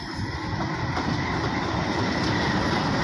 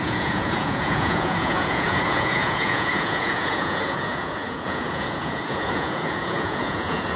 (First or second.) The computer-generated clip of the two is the second